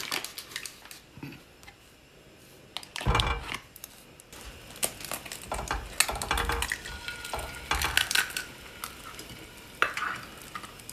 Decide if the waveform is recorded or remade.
recorded